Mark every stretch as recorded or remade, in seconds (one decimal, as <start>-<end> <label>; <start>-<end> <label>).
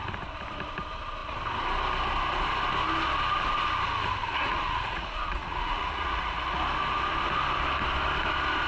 0.0-4.2 recorded; 4.2-6.6 remade; 6.6-8.7 recorded